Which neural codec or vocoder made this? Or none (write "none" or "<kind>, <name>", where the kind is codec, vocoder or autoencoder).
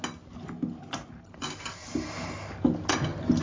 none